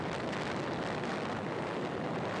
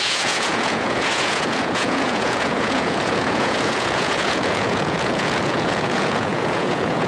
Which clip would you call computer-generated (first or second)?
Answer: second